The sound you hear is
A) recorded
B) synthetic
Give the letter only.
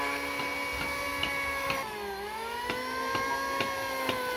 A